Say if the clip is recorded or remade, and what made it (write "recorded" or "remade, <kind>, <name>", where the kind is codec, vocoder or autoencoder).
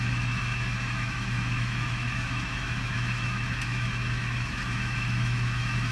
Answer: remade, autoencoder, DAC-VAE